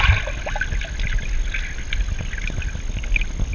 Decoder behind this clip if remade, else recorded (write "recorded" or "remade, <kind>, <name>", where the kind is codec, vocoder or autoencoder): recorded